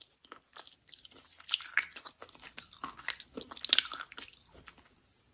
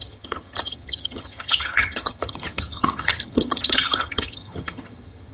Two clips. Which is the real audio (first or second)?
first